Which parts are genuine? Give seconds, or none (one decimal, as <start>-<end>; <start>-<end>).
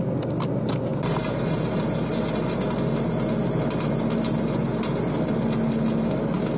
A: 0.0-6.6